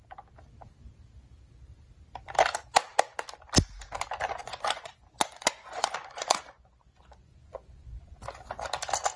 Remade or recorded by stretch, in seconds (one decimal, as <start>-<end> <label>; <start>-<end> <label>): 0.0-4.4 recorded; 4.4-8.2 remade; 8.2-9.2 recorded